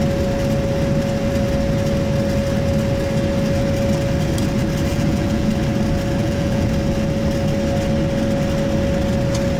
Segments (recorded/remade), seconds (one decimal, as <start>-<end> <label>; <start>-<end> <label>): 0.0-4.9 recorded; 4.9-5.5 remade; 5.5-6.2 recorded; 6.2-6.7 remade; 6.7-9.6 recorded